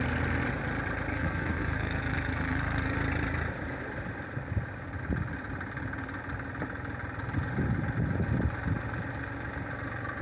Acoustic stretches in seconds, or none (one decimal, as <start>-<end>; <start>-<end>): 0.0-1.1; 3.0-10.2